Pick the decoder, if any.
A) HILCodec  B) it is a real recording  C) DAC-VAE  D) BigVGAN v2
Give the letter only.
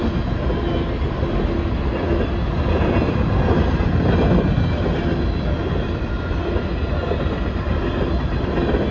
B